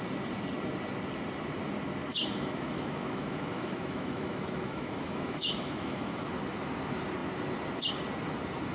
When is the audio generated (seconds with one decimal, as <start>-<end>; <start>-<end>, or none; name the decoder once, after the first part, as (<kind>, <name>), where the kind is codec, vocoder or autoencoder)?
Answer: 2.1-6.2 (autoencoder, DAC-VAE)